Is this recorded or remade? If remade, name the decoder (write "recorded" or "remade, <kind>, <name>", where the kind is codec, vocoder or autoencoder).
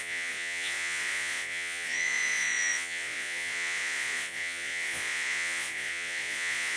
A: remade, vocoder, Vocos